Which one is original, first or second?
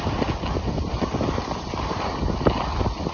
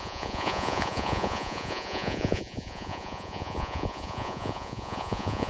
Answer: first